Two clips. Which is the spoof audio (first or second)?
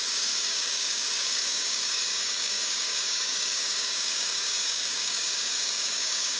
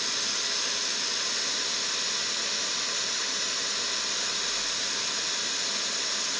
first